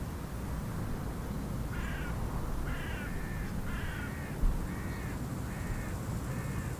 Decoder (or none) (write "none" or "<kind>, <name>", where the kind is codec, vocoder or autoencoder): none